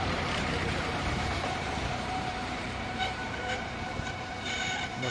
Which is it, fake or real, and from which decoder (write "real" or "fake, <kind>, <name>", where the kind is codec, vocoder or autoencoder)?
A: fake, vocoder, BigVGAN v2